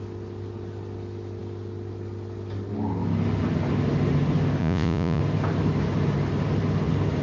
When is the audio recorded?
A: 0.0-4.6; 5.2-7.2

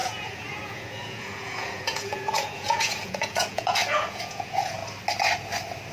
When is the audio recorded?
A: 4.8-5.9

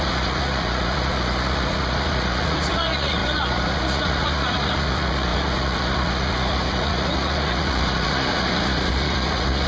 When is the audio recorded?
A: none

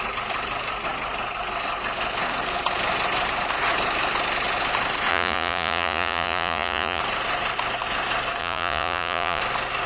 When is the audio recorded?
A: 0.0-5.1; 7.0-8.4; 9.4-9.9

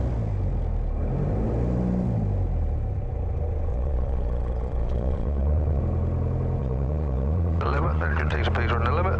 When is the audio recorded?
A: 0.0-3.7; 5.8-6.6; 8.4-9.2

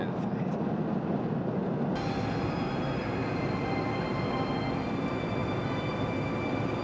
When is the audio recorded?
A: 0.0-6.8

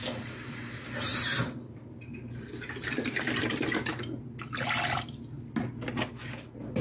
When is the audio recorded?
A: 0.0-6.8